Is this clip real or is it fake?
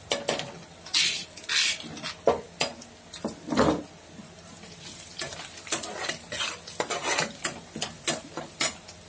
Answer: real